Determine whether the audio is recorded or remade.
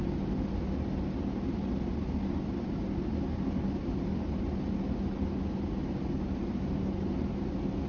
recorded